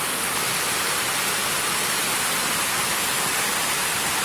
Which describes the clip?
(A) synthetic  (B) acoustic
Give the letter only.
B